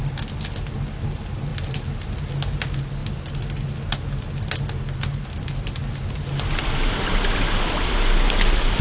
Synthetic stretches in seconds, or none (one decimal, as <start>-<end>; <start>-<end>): none